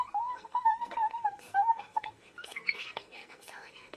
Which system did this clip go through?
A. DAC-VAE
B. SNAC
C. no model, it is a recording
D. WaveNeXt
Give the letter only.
B